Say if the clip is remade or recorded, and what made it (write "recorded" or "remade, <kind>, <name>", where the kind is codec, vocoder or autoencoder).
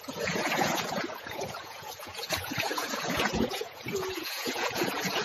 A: remade, vocoder, Vocos